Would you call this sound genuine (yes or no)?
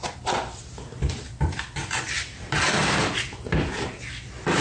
yes